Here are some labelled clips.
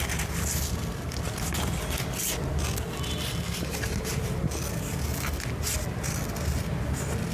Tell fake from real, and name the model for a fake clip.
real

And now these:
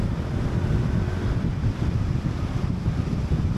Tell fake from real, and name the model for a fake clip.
fake, vocoder, BigVGAN v2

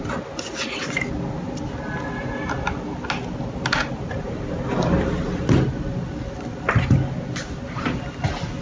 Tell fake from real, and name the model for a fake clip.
real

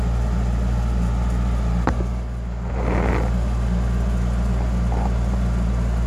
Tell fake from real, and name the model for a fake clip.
real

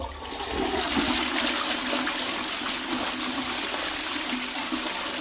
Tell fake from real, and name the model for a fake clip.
real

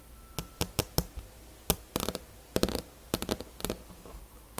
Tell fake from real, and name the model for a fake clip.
real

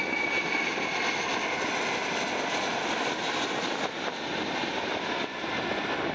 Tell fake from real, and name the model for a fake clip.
real